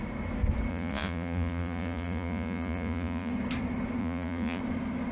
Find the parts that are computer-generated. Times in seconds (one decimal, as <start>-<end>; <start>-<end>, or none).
0.7-3.3; 4.0-4.6